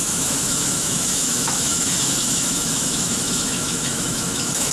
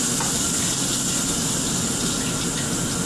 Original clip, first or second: second